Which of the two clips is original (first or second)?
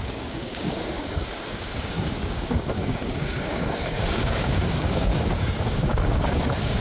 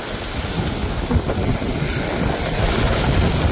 second